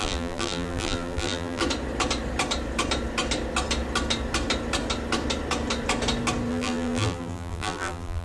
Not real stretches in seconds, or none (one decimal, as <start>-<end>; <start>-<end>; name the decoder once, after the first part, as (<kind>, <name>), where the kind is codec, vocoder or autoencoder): 0.0-1.6 (vocoder, BigVGAN v2); 6.5-8.2